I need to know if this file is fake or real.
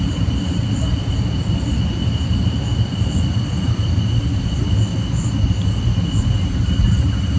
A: real